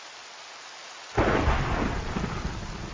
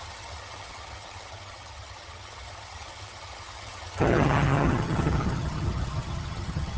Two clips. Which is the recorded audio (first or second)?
first